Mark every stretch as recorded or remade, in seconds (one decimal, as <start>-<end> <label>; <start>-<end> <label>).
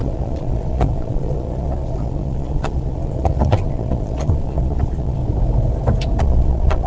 0.0-5.2 remade; 5.2-6.2 recorded; 6.2-6.9 remade